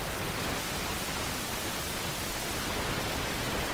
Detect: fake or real real